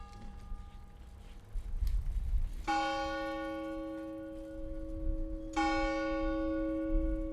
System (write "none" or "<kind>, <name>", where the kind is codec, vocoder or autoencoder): none